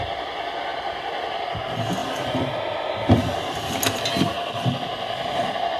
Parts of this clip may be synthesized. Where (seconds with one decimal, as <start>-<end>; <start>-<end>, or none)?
none